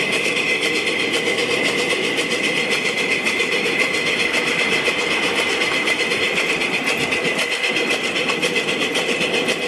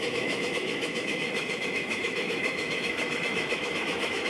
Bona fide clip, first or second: first